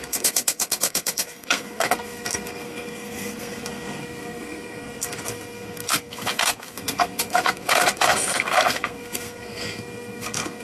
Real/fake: fake